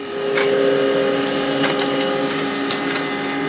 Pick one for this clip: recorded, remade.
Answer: recorded